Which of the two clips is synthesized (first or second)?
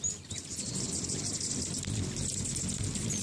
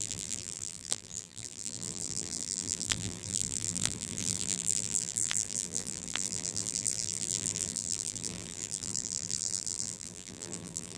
second